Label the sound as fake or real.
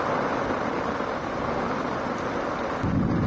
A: real